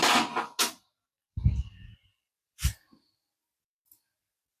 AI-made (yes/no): no